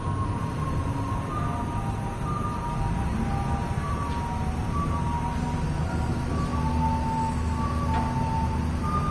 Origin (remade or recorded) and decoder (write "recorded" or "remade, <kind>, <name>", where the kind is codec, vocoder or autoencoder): recorded